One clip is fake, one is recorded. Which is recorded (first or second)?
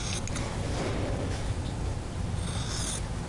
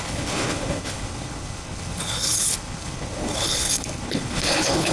first